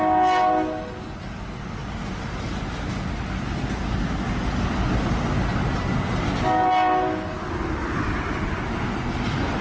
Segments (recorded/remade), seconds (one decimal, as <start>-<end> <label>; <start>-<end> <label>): 0.0-9.6 recorded